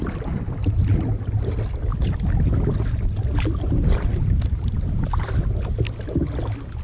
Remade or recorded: recorded